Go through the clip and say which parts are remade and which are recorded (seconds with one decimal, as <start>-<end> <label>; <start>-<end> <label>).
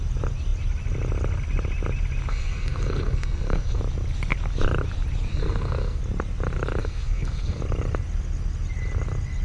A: 0.0-2.3 recorded; 2.3-3.8 remade; 3.8-5.3 recorded; 5.3-6.0 remade; 6.0-6.8 recorded; 6.8-7.6 remade; 7.6-9.4 recorded